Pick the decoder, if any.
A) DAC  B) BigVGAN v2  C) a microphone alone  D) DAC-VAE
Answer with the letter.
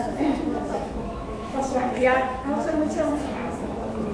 D